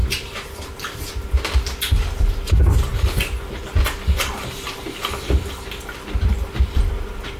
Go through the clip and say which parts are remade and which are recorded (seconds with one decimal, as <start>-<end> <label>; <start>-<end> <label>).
0.0-1.0 remade; 1.0-7.4 recorded